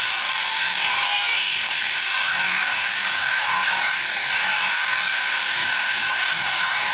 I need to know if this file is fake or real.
fake